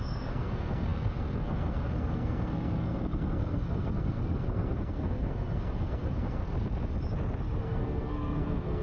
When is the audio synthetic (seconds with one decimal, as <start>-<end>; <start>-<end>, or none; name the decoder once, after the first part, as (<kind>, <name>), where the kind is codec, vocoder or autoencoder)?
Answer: 0.0-6.4 (codec, SNAC); 7.6-8.8